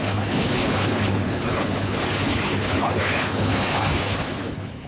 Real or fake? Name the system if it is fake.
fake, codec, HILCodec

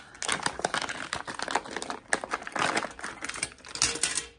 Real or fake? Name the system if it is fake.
real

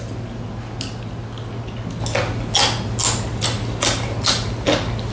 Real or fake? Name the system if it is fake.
real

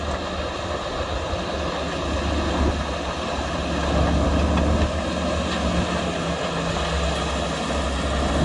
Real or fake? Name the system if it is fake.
real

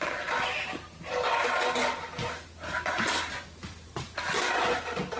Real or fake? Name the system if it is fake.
real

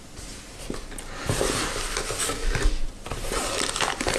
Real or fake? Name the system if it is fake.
real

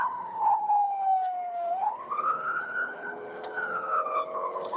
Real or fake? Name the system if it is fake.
fake, codec, HILCodec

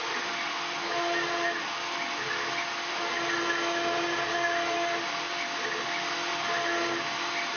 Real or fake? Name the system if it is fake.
real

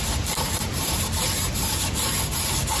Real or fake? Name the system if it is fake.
real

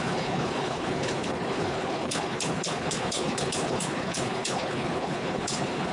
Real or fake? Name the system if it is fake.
fake, codec, HILCodec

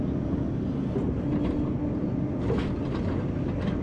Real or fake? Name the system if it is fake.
real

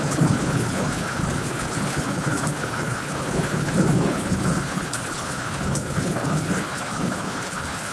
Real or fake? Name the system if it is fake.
fake, codec, HILCodec